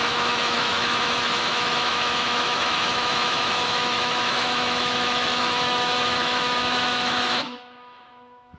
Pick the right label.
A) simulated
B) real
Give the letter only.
A